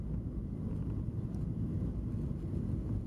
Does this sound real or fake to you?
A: real